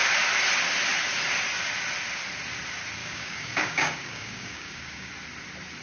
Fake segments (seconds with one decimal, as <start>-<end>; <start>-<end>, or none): 3.0-5.1